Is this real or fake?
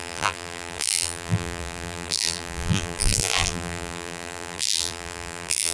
fake